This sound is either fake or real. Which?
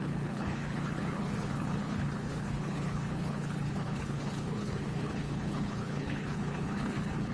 fake